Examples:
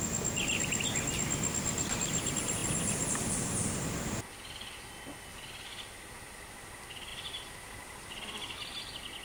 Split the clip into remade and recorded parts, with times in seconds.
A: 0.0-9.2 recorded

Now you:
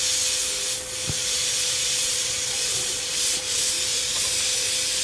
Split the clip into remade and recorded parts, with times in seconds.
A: 0.0-1.2 recorded; 1.2-3.4 remade; 3.4-3.9 recorded; 3.9-4.4 remade; 4.4-5.0 recorded

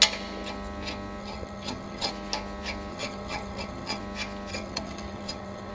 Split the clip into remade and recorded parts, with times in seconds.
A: 0.0-1.2 recorded; 1.2-2.1 remade; 2.1-2.9 recorded; 2.9-4.0 remade; 4.0-4.5 recorded; 4.5-5.7 remade

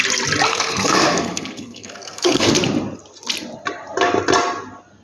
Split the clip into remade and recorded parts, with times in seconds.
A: 0.0-0.5 recorded; 0.5-2.5 remade; 2.5-5.0 recorded

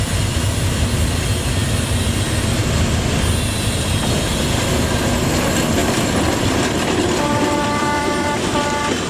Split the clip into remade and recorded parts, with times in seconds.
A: 0.0-5.8 recorded; 5.8-8.4 remade; 8.4-9.1 recorded

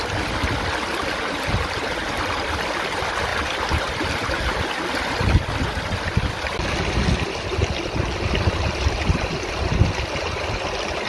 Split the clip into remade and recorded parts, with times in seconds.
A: 0.0-11.1 recorded

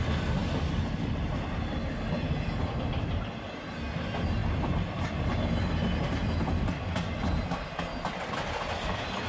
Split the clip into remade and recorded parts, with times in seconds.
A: 0.0-9.3 recorded